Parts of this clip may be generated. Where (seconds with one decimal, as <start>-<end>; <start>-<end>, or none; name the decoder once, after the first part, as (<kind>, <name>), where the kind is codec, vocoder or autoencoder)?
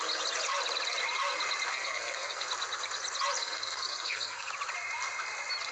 1.7-2.5 (codec, SNAC); 3.4-4.5